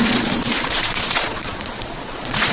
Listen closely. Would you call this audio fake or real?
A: fake